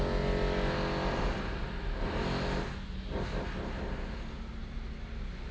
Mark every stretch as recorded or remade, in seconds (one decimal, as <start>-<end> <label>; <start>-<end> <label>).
0.0-5.5 recorded